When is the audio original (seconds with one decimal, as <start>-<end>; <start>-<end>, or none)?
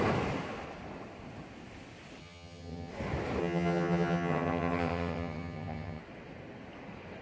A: 0.0-2.2; 2.9-3.4; 6.0-7.2